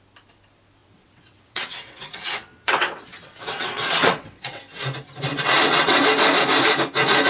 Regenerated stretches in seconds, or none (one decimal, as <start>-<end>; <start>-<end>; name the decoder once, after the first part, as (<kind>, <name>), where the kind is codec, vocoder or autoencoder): 0.8-4.6 (vocoder, WaveNeXt); 5.3-6.0